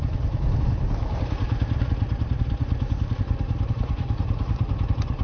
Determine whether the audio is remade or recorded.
recorded